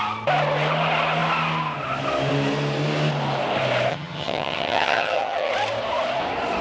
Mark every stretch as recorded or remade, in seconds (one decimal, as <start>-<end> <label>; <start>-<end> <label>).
0.0-3.9 recorded; 3.9-5.5 remade; 5.5-6.6 recorded